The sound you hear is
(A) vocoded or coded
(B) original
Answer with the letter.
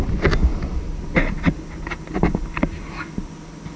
B